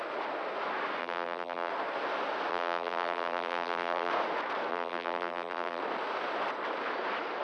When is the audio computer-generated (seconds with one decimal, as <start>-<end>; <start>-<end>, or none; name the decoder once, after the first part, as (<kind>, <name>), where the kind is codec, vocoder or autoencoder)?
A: 1.0-1.7 (vocoder, BigVGAN v2); 2.5-4.1; 4.7-5.8